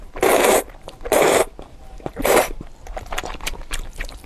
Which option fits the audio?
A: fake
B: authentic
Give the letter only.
A